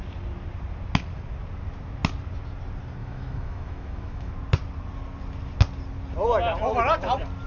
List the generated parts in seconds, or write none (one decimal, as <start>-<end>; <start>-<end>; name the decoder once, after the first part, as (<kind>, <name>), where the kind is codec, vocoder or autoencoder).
3.0-4.3 (autoencoder, DAC-VAE)